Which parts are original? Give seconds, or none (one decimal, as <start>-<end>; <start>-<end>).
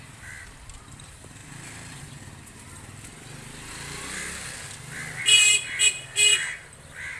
0.0-7.2